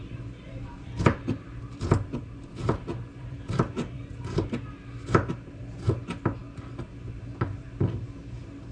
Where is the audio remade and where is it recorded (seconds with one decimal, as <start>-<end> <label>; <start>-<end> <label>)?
0.0-0.7 recorded; 0.7-4.6 remade; 4.6-8.7 recorded